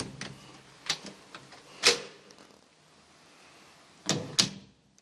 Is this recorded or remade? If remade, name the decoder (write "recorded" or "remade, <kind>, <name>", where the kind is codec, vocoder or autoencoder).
recorded